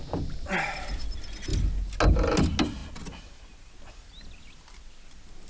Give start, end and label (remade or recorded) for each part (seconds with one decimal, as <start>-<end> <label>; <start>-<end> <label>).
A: 0.0-5.5 recorded